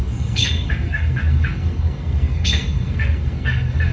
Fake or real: fake